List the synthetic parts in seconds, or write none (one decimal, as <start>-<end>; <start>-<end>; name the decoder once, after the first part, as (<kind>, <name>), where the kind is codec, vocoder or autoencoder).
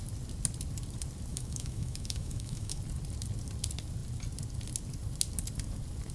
1.3-2.8 (autoencoder, DAC-VAE)